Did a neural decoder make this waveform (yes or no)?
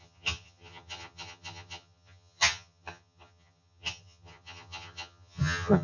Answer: yes